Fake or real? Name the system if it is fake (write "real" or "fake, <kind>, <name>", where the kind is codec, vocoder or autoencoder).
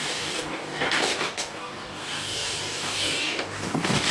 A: fake, codec, DAC